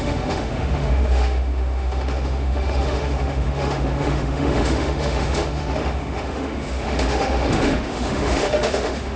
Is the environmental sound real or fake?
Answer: fake